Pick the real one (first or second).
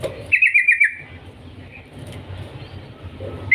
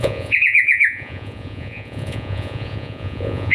first